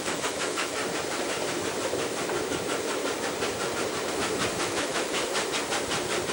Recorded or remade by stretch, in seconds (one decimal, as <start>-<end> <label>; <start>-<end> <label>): 0.0-0.8 remade; 0.8-4.6 recorded; 4.6-5.2 remade; 5.2-6.3 recorded